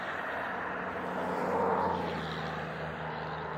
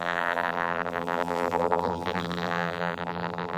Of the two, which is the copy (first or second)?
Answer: second